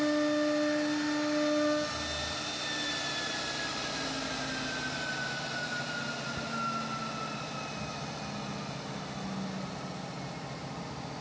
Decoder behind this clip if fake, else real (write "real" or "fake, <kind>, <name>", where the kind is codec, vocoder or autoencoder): real